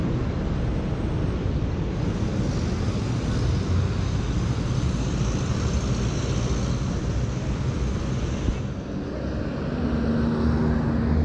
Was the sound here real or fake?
real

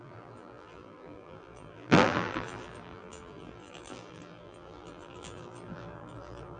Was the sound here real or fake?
fake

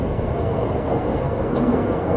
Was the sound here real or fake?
fake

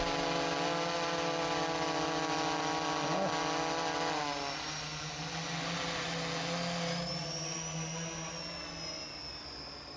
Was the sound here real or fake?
real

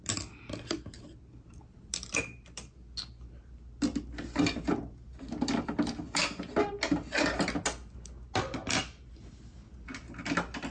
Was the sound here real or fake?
real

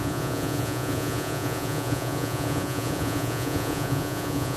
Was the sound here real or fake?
fake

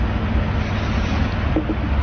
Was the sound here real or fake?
real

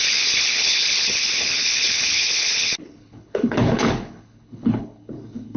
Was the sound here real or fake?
fake